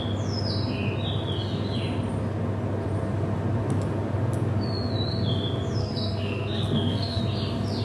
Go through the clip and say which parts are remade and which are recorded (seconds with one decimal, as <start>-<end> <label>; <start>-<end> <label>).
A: 0.0-5.8 recorded; 5.8-7.2 remade; 7.2-7.8 recorded